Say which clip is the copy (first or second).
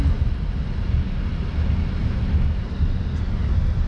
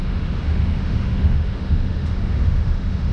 second